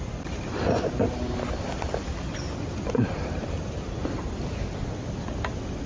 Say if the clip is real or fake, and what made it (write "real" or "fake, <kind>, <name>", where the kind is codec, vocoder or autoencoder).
real